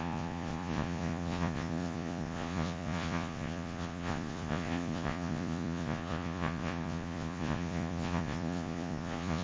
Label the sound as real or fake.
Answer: fake